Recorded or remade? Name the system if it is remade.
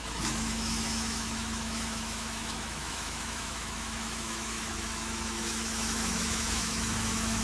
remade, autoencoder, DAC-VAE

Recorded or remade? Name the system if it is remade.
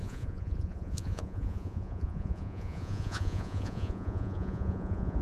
remade, vocoder, Vocos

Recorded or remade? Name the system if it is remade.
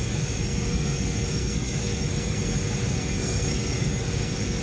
remade, codec, SNAC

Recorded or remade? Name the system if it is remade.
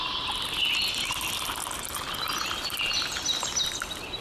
recorded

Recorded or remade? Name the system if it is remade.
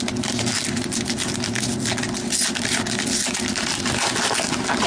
recorded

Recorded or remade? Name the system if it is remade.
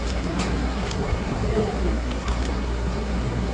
remade, codec, SNAC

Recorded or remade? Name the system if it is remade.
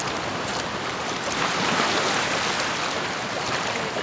recorded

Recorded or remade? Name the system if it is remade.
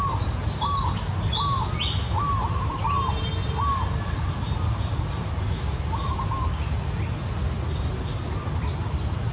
recorded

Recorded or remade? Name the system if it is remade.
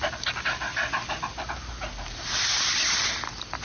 recorded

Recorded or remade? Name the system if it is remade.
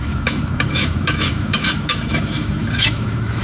remade, autoencoder, DAC-VAE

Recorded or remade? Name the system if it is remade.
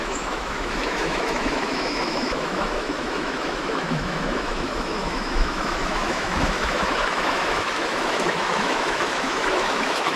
remade, autoencoder, DAC-VAE